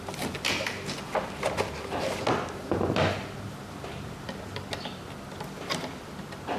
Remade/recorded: recorded